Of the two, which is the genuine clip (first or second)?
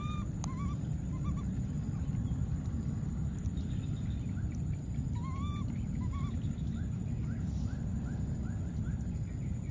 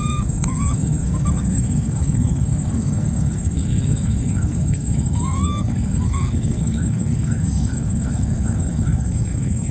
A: first